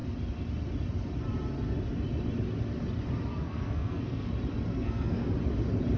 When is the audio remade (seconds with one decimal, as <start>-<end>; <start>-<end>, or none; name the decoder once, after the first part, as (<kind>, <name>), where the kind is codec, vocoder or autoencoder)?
3.3-4.3 (codec, SNAC); 4.7-5.3